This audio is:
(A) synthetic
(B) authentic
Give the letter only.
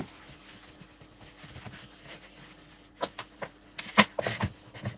B